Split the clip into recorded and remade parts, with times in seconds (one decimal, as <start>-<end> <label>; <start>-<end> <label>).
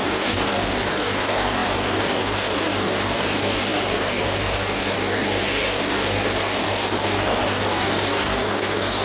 0.0-9.0 remade